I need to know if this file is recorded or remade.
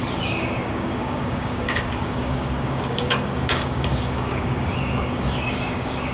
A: remade